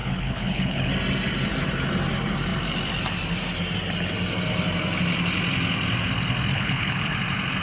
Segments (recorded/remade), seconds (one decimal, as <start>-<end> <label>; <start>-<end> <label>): 0.0-0.9 remade; 0.9-6.5 recorded; 6.5-7.1 remade; 7.1-7.6 recorded